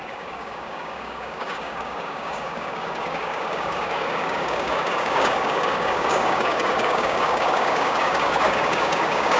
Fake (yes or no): yes